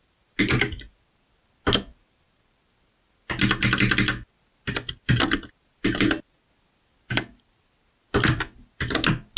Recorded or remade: recorded